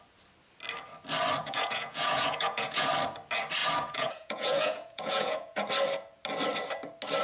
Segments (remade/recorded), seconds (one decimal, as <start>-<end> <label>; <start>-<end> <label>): 0.0-1.4 recorded; 1.4-2.9 remade; 2.9-3.6 recorded; 3.6-5.7 remade; 5.7-7.2 recorded